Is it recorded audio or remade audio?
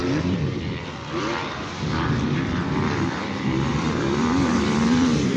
remade